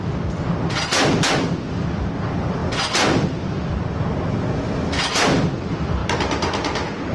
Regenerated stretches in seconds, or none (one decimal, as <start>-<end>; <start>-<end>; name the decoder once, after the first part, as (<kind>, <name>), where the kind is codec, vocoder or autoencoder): none